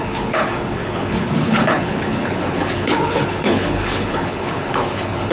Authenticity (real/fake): fake